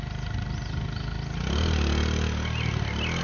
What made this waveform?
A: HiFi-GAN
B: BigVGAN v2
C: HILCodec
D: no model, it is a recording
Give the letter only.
D